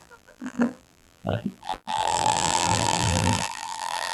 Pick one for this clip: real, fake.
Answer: fake